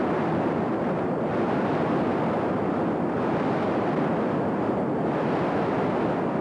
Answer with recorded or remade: recorded